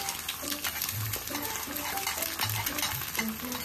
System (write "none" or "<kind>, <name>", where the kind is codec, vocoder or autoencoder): none